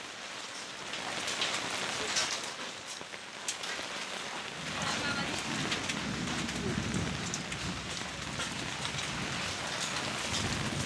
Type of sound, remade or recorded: recorded